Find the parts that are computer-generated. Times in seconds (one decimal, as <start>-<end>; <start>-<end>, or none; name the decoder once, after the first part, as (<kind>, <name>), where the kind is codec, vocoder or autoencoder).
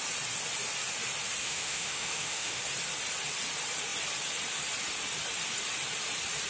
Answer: 1.4-2.6 (autoencoder, DAC-VAE)